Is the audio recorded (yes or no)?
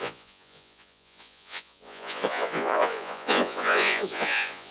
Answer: no